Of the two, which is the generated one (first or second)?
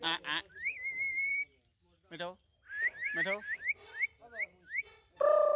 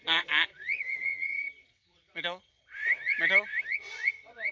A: second